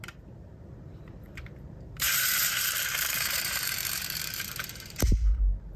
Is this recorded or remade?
remade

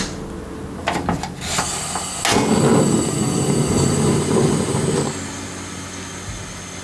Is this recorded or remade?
recorded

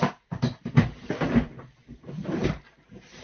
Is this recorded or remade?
remade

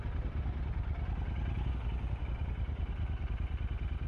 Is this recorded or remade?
recorded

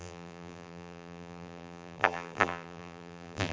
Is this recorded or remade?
remade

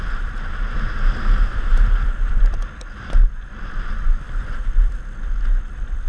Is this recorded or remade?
remade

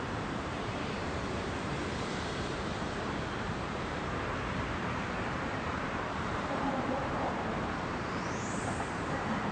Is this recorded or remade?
remade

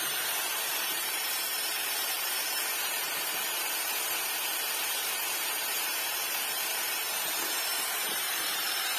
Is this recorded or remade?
remade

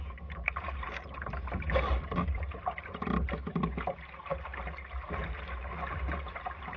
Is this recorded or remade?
remade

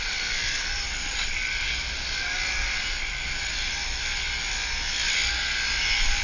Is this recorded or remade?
recorded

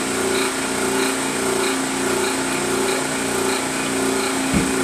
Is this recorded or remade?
recorded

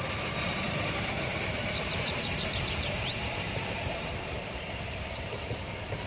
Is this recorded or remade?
remade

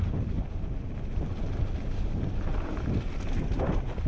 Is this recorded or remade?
recorded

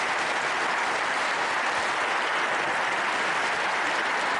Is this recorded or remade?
recorded